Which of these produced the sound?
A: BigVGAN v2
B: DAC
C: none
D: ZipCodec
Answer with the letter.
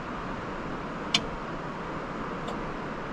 C